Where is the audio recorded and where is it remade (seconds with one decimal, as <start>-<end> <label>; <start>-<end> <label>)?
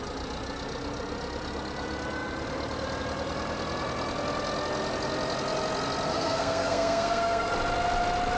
0.0-6.1 recorded; 6.1-7.5 remade; 7.5-8.4 recorded